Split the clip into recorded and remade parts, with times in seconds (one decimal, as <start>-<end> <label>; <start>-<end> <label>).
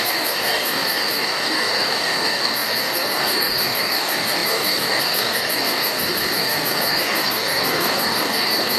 0.0-8.8 remade